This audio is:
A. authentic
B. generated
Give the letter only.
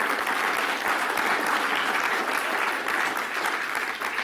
A